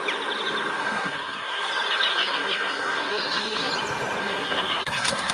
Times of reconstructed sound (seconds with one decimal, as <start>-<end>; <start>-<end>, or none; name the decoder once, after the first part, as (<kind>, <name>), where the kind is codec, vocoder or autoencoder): 0.8-1.7 (codec, SNAC); 2.1-3.7; 4.2-5.3

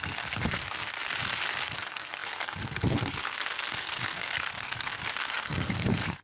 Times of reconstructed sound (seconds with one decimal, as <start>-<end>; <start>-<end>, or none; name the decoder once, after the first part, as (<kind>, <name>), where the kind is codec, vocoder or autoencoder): 0.0-0.9 (codec, SNAC); 1.7-6.2

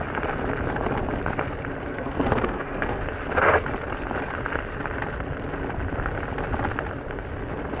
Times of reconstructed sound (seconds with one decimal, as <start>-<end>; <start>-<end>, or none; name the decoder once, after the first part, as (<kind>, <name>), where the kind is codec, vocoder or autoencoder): 1.9-3.0 (codec, SNAC)

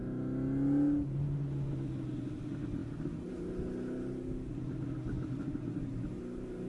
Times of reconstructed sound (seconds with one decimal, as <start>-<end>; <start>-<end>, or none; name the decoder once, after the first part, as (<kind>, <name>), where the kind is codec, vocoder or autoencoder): none

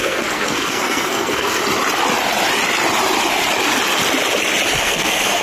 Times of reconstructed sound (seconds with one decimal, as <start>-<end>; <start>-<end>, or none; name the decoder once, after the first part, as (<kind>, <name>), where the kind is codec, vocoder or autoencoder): 0.0-1.6 (codec, SNAC); 4.8-5.4

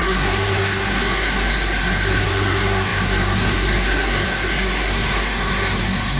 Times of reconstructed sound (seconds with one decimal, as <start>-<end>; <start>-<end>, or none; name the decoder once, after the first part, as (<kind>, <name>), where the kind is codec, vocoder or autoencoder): 0.0-6.2 (codec, SNAC)

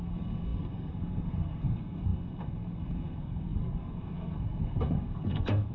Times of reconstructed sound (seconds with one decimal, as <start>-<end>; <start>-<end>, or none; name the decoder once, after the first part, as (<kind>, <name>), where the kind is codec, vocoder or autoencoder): 0.0-5.7 (codec, SNAC)

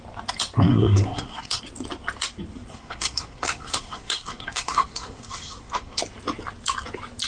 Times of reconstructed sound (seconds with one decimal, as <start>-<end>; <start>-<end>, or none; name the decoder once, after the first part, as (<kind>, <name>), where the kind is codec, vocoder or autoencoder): 0.7-1.6 (codec, SNAC); 2.7-6.0